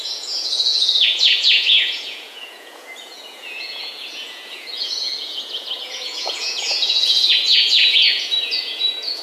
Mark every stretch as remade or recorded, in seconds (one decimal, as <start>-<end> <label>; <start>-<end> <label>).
0.0-9.2 remade